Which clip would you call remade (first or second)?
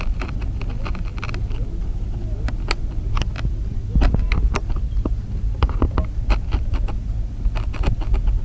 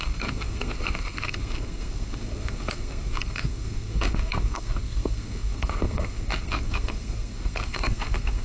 second